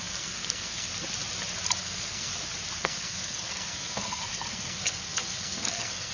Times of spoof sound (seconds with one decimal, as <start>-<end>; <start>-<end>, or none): 0.0-0.9; 1.8-2.3; 2.8-6.1